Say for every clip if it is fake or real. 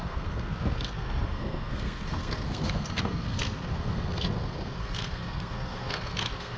fake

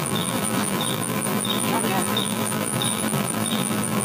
fake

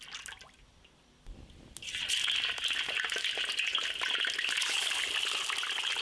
real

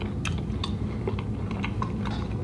real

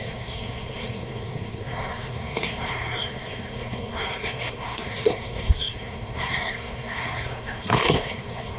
fake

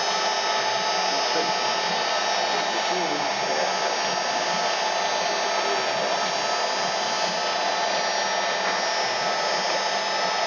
real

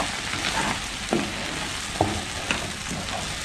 real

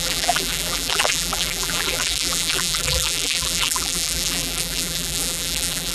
fake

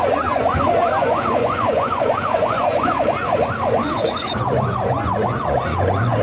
fake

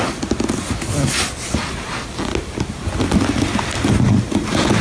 real